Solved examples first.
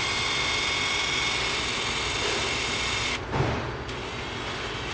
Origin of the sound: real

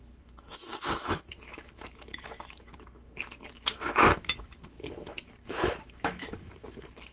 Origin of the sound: fake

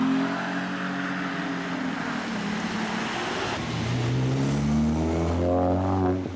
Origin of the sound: real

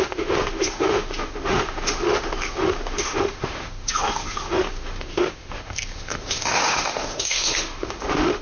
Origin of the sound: fake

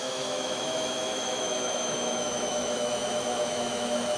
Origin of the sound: fake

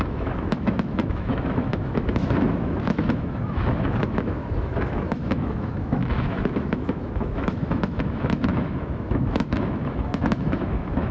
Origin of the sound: fake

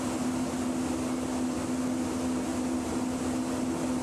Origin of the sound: real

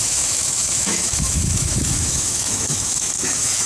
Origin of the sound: fake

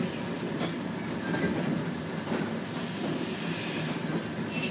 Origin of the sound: real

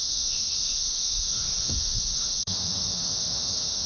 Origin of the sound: fake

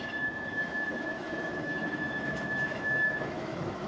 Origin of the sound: fake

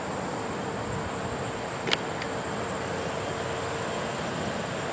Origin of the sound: real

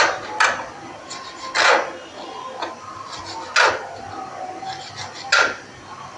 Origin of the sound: real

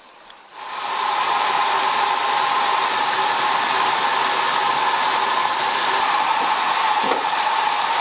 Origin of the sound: real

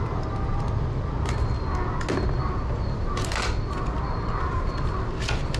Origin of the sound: real